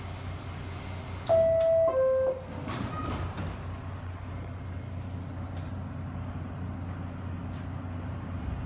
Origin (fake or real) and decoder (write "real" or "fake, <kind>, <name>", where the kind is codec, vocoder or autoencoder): real